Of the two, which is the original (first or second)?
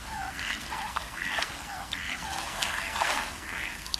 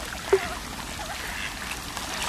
second